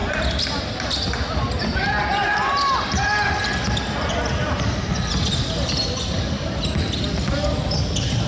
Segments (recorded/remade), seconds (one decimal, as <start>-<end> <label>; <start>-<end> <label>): 0.0-8.3 recorded